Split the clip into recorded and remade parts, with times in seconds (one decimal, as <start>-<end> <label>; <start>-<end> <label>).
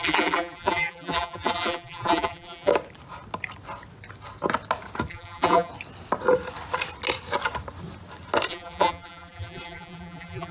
0.0-2.7 remade; 2.7-5.1 recorded; 5.1-5.7 remade; 5.7-8.5 recorded; 8.5-10.5 remade